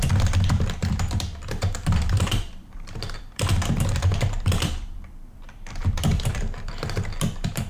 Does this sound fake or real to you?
fake